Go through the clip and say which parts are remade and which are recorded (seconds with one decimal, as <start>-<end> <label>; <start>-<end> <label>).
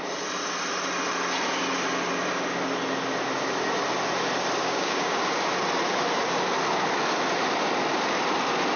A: 0.0-4.6 recorded; 4.6-5.2 remade; 5.2-8.8 recorded